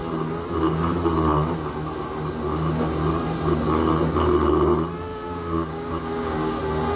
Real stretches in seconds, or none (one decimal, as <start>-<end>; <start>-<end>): 0.0-5.1; 6.6-7.0

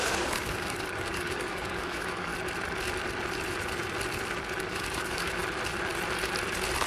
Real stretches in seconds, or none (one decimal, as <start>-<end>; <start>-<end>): 2.3-4.6; 5.4-6.9

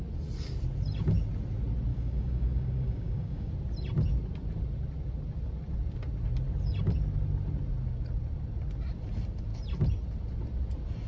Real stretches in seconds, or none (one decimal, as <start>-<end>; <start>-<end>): 0.0-1.9; 3.5-11.1

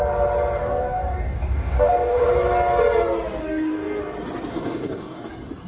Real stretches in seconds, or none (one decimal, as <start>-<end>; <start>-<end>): 0.0-0.6; 2.3-3.4; 4.0-4.5; 5.3-5.7